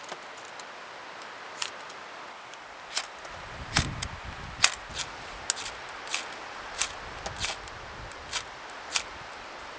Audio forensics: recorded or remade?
recorded